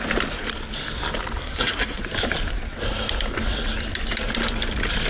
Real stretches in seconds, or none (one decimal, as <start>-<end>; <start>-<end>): 0.0-1.4; 2.0-5.1